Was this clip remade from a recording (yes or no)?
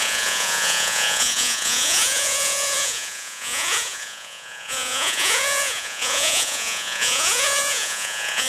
yes